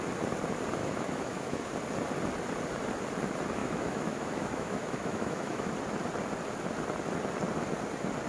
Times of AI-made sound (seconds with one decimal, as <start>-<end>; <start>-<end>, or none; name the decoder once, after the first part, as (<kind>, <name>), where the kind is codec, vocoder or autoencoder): 0.8-1.7 (autoencoder, DAC-VAE); 3.6-5.7